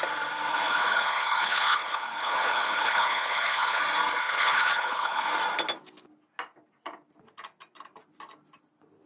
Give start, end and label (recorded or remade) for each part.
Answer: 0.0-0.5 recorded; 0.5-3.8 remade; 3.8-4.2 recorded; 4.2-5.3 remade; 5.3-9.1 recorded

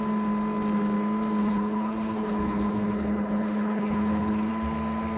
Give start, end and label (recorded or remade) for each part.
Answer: 0.0-1.4 recorded; 1.4-4.5 remade; 4.5-5.2 recorded

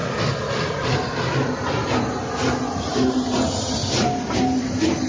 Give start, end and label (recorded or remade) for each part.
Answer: 0.0-5.1 recorded

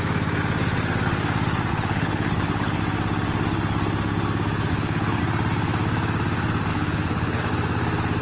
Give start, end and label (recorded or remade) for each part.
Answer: 0.0-1.7 recorded; 1.7-2.8 remade; 2.8-4.7 recorded; 4.7-5.2 remade; 5.2-6.7 recorded; 6.7-7.5 remade; 7.5-8.2 recorded

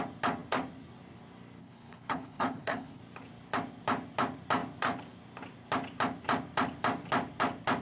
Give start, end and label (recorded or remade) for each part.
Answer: 0.0-1.6 recorded; 1.6-3.0 remade; 3.0-7.8 recorded